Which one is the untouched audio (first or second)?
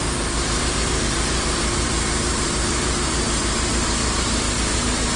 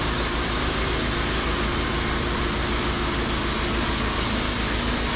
second